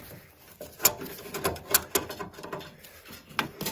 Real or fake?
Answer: real